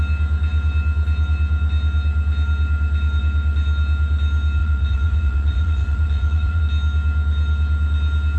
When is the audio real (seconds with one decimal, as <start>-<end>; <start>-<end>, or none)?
0.0-4.6; 6.6-8.4